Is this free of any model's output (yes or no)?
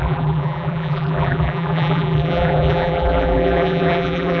no